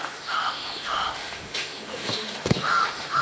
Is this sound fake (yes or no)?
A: yes